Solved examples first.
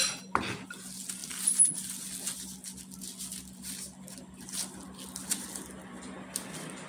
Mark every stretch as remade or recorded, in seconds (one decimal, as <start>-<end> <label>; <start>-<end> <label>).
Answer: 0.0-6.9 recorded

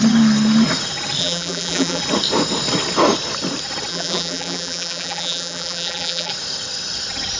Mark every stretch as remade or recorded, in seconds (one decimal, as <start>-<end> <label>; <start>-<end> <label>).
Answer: 0.0-1.2 recorded; 1.2-2.0 remade; 2.0-3.9 recorded; 3.9-6.3 remade; 6.3-7.4 recorded

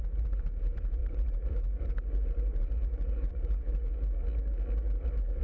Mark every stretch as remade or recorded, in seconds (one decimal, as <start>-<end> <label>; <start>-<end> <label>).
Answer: 0.0-3.8 remade; 3.8-5.4 recorded

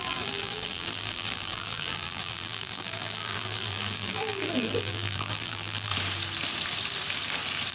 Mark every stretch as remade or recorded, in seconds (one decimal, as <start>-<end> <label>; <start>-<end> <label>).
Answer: 0.0-5.9 remade; 5.9-7.7 recorded

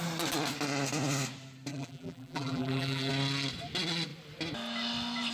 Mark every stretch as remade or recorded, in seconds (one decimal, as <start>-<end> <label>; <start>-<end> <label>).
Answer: 0.0-1.7 recorded; 1.7-3.1 remade; 3.1-5.3 recorded